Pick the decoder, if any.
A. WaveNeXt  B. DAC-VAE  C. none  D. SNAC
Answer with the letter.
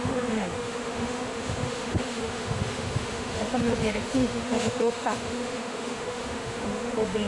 B